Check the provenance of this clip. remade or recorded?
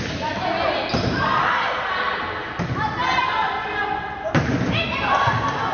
recorded